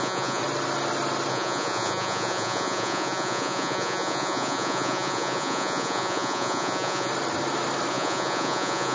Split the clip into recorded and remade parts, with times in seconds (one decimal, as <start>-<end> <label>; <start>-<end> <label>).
0.0-0.4 remade; 0.4-1.3 recorded; 1.3-7.1 remade; 7.1-7.9 recorded; 7.9-8.9 remade